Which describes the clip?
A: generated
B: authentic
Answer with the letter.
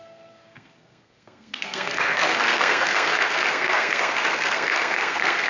A